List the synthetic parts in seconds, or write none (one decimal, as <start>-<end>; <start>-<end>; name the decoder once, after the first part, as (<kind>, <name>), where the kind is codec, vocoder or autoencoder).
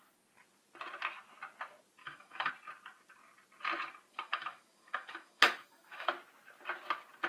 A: 2.0-2.5 (autoencoder, DAC-VAE); 4.1-6.1